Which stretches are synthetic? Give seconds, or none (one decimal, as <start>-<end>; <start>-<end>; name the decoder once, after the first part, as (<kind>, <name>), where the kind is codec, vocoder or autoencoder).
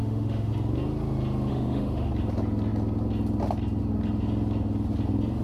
0.0-0.5 (autoencoder, DAC-VAE); 1.5-2.1